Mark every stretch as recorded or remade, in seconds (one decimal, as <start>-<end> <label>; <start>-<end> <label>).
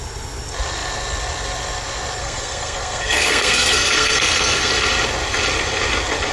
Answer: 0.0-2.2 recorded; 2.2-4.7 remade; 4.7-6.3 recorded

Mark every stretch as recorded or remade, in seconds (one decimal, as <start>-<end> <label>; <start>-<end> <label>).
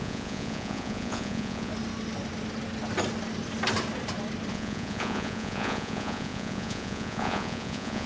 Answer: 0.0-1.7 remade; 1.7-4.5 recorded; 4.5-8.1 remade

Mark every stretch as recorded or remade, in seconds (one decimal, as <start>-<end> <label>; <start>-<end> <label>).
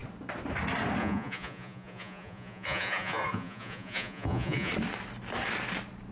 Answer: 0.0-1.0 recorded; 1.0-4.7 remade; 4.7-6.1 recorded